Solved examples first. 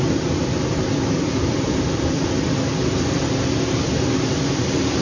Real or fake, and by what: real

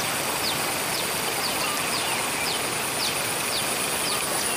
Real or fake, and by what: real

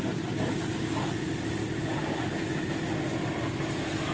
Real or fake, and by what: real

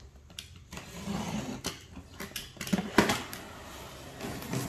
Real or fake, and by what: real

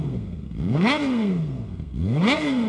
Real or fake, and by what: fake, codec, SNAC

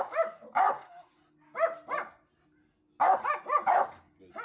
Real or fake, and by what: real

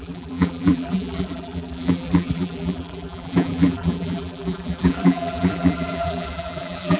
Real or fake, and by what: fake, vocoder, BigVGAN v2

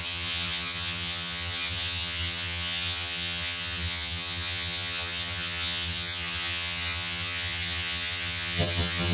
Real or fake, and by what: fake, vocoder, HiFi-GAN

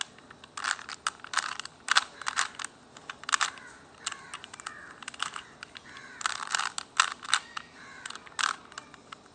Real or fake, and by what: real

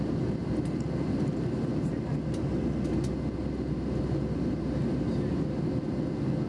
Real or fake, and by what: real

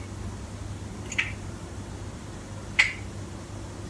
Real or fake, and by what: real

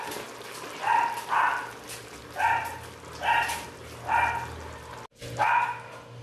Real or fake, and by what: real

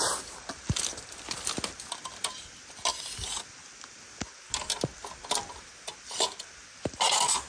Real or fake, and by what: real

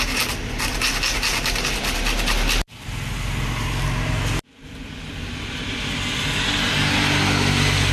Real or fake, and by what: real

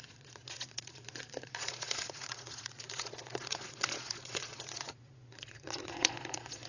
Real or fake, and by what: fake, vocoder, Vocos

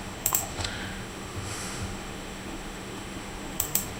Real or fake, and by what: fake, autoencoder, DAC-VAE